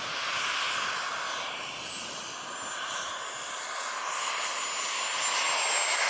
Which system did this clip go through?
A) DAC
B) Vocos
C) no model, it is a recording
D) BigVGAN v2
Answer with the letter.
C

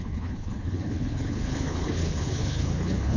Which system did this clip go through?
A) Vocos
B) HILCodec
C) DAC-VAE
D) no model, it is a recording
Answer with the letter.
B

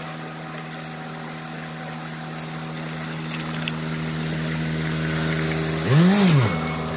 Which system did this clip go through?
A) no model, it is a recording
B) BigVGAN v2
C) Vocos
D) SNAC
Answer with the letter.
A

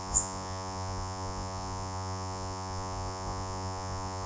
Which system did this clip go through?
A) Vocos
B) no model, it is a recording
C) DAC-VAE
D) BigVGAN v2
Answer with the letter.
A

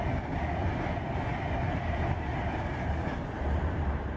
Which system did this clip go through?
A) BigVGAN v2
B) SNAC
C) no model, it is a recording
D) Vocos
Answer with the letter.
C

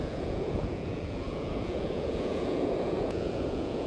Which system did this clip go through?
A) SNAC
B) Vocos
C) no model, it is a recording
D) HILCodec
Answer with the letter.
B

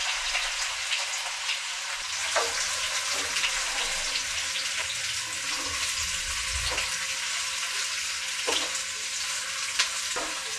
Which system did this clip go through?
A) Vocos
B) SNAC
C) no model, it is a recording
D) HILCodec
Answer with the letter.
C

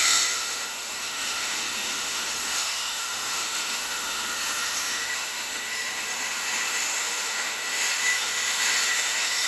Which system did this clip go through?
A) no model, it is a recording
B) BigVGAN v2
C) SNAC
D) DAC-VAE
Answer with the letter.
D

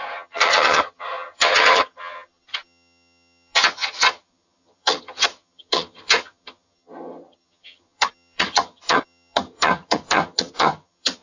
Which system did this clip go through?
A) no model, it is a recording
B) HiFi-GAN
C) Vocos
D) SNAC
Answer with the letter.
B